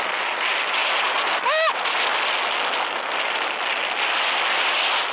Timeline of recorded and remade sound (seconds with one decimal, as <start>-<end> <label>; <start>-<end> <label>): 0.0-5.1 recorded